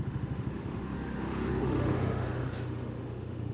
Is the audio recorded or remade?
remade